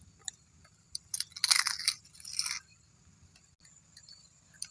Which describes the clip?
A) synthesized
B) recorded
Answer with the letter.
B